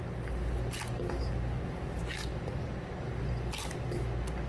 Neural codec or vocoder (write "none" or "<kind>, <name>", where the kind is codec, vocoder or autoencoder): none